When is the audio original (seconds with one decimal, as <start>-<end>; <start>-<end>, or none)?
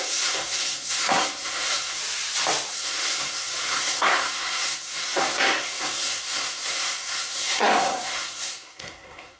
2.0-2.7